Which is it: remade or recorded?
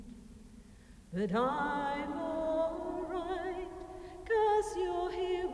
recorded